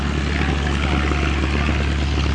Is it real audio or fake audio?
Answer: real